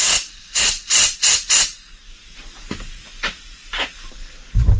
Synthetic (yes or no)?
no